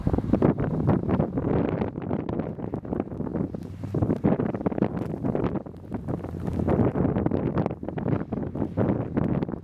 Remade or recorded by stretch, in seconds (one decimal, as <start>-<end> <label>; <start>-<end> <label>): 0.0-1.4 remade; 1.4-3.3 recorded; 3.3-8.0 remade; 8.0-9.6 recorded